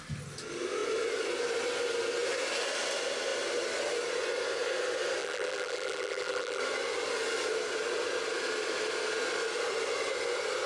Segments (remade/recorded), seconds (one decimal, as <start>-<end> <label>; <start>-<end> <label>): 0.0-5.2 recorded; 5.2-6.6 remade; 6.6-10.7 recorded